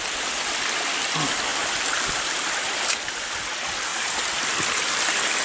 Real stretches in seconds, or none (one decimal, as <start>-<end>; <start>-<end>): 0.0-1.5; 3.3-3.9